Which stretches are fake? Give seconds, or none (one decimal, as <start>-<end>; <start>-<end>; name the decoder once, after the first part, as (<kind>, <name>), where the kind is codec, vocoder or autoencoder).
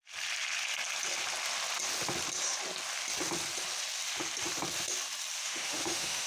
5.4-6.3 (autoencoder, DAC-VAE)